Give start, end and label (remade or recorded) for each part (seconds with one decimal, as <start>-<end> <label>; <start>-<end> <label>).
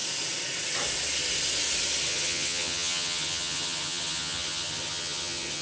0.0-2.1 recorded; 2.1-5.6 remade